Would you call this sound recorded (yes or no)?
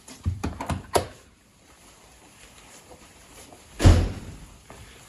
no